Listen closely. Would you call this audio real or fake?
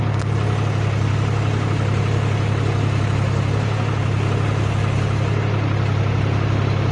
real